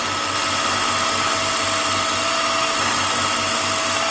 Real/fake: real